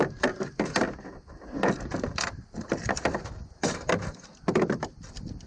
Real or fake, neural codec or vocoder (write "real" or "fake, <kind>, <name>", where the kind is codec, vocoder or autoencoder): real